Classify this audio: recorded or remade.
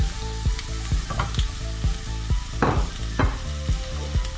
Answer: recorded